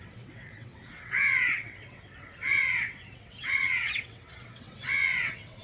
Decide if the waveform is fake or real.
fake